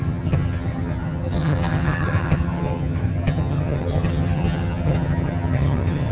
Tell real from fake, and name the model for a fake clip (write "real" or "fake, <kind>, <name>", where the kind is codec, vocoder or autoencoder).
fake, vocoder, HiFi-GAN